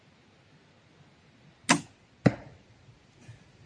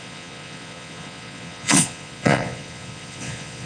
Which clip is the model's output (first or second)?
second